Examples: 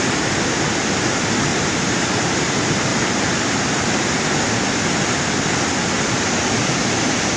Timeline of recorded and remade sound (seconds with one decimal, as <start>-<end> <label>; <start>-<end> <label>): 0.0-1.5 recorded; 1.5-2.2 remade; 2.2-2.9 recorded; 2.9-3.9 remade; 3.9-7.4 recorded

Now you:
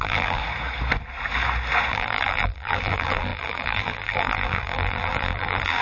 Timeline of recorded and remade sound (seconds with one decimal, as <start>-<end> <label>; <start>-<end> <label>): 0.0-0.4 remade; 0.4-1.9 recorded; 1.9-5.8 remade

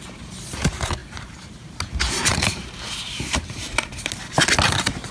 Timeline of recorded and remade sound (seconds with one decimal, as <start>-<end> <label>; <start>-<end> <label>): 0.0-1.0 recorded; 1.0-1.7 remade; 1.7-2.3 recorded; 2.3-3.9 remade; 3.9-5.1 recorded

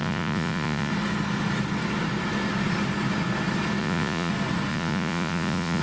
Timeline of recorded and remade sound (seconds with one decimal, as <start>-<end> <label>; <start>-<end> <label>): 0.0-0.9 remade; 0.9-3.8 recorded; 3.8-4.3 remade; 4.3-4.7 recorded; 4.7-5.8 remade

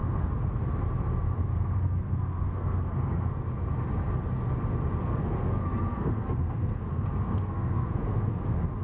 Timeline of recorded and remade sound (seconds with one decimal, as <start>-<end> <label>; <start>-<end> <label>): 0.0-0.6 remade; 0.6-1.5 recorded; 1.5-3.3 remade; 3.3-5.0 recorded; 5.0-8.4 remade; 8.4-8.8 recorded

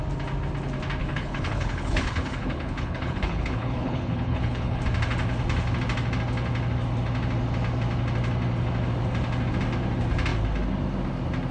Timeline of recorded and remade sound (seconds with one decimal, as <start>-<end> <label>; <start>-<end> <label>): 0.0-1.0 recorded; 1.0-4.8 remade; 4.8-11.5 recorded

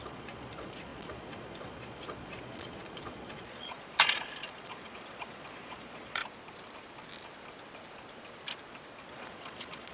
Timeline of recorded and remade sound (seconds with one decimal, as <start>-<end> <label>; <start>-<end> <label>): 0.0-6.2 remade; 6.2-9.1 recorded; 9.1-9.9 remade

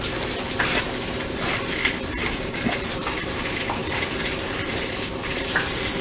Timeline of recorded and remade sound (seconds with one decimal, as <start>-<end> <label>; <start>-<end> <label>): 0.0-2.2 recorded; 2.2-2.8 remade; 2.8-6.0 recorded